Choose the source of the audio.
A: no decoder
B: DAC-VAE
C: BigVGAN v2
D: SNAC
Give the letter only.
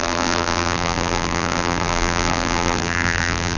C